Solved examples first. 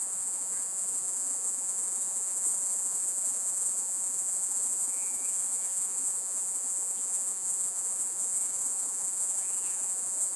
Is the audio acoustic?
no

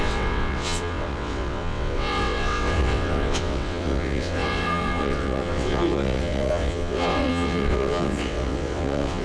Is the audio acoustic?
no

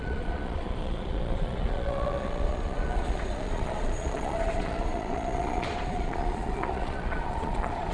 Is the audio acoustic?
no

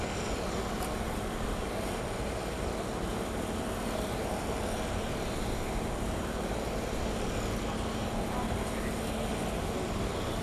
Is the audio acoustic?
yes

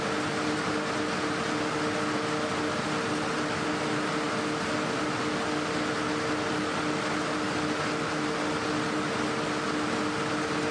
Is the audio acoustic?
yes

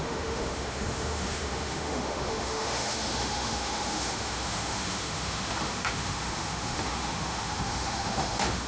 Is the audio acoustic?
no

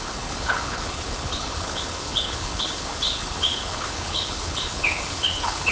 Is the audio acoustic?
no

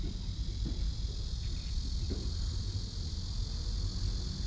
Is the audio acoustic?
yes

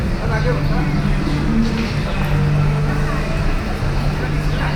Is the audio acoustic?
yes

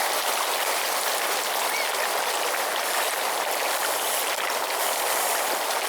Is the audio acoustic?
yes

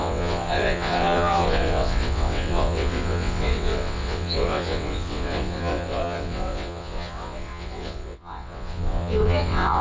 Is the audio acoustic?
no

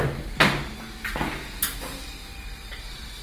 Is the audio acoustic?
yes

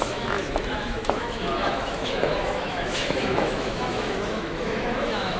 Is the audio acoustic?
no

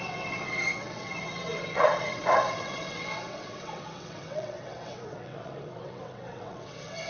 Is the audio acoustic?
no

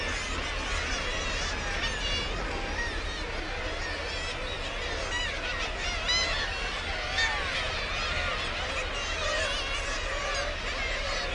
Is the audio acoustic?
yes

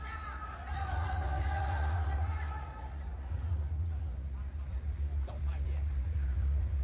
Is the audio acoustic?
no